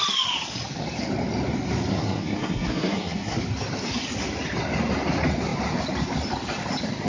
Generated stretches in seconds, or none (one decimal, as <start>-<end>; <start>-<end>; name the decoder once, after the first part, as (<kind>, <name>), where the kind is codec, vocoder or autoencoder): 1.9-3.4 (codec, SNAC)